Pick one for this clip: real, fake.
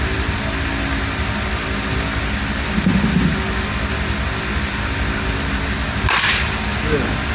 real